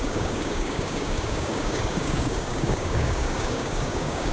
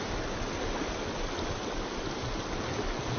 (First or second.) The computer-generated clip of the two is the first